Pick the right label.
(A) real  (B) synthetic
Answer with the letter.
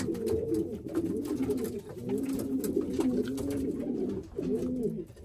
A